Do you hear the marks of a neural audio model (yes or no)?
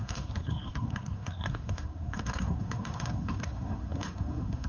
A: yes